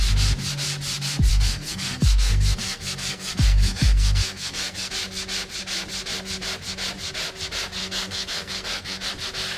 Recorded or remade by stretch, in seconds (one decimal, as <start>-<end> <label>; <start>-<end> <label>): 0.0-1.3 recorded; 1.3-4.9 remade; 4.9-7.8 recorded; 7.8-9.1 remade; 9.1-9.6 recorded